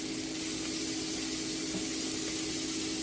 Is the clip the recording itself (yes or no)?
yes